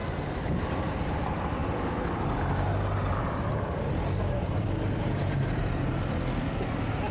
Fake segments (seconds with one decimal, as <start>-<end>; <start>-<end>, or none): none